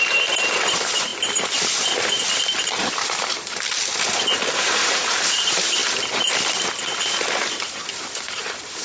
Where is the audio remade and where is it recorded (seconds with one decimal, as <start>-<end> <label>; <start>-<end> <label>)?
0.0-1.1 remade; 1.1-4.0 recorded; 4.0-5.8 remade; 5.8-8.3 recorded; 8.3-8.8 remade